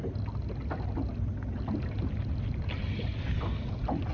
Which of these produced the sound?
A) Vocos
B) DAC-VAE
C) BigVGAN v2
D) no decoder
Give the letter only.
D